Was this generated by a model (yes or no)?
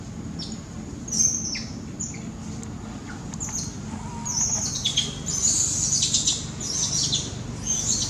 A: no